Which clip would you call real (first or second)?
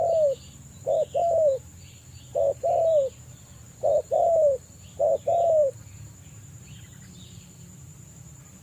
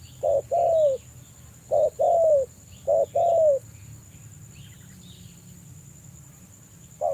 second